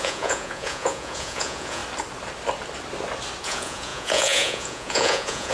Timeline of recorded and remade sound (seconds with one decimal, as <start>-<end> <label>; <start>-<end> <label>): 0.0-1.8 remade; 1.8-3.4 recorded; 3.4-5.5 remade